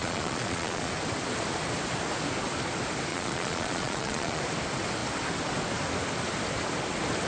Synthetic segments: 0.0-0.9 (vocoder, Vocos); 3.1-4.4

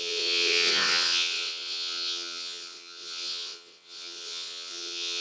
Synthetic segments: 0.0-5.2 (vocoder, WaveNeXt)

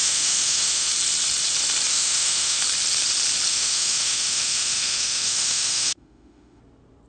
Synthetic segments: 0.0-0.9 (autoencoder, DAC-VAE); 1.9-2.6; 3.5-6.6

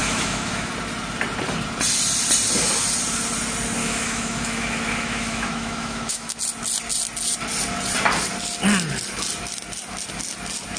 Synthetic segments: 0.0-0.7 (autoencoder, DAC-VAE); 3.8-6.4

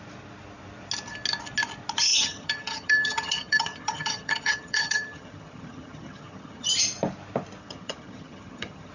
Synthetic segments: 2.1-6.7 (vocoder, HiFi-GAN); 7.6-8.9

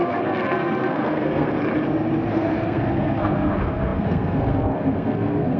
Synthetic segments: 0.0-1.6 (codec, SNAC); 2.3-5.6

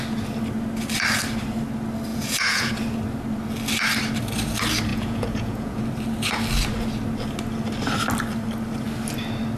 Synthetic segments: 2.1-2.7 (vocoder, Vocos); 4.9-5.8